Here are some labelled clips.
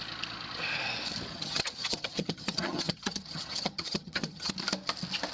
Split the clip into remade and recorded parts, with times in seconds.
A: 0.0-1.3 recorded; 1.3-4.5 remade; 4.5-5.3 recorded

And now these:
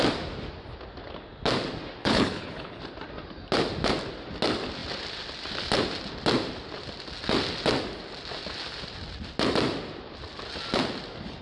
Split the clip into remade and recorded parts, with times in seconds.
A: 0.0-2.0 recorded; 2.0-2.8 remade; 2.8-11.4 recorded

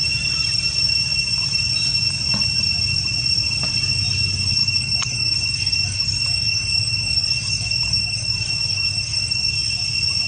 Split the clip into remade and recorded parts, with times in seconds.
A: 0.0-4.6 recorded; 4.6-9.5 remade; 9.5-10.3 recorded